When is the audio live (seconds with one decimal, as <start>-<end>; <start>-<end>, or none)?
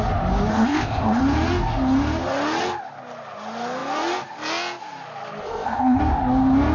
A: 0.0-0.5; 1.2-5.4; 6.0-6.7